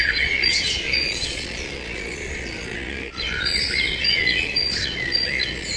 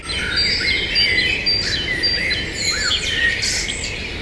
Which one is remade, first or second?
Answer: first